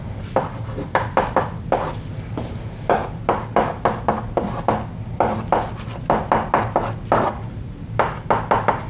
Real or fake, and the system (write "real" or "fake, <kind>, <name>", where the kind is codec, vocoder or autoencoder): real